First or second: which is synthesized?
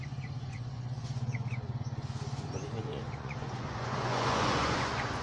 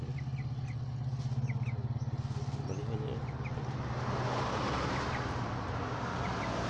first